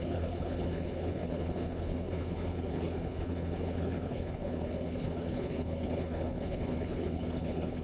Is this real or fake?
fake